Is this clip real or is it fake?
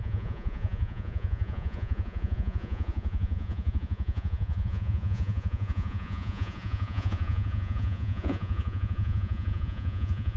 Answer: fake